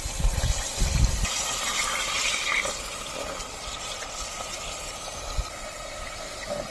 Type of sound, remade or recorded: recorded